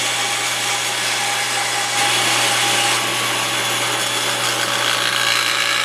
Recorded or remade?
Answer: recorded